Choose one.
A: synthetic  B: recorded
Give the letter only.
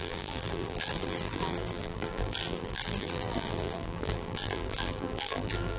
A